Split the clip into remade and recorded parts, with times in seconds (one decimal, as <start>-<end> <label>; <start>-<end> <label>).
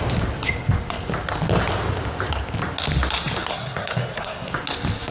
0.0-3.5 recorded; 3.5-4.5 remade; 4.5-5.1 recorded